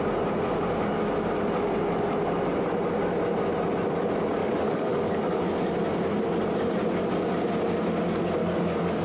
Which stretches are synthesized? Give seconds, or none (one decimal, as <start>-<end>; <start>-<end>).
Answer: 4.4-5.4; 8.4-9.0